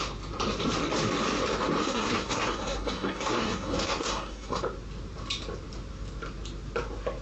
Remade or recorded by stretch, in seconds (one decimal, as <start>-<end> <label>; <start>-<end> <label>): 0.0-1.8 recorded; 1.8-4.6 remade; 4.6-7.2 recorded